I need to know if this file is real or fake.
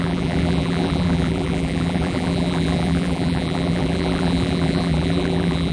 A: fake